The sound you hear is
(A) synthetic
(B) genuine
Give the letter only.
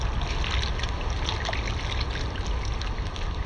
B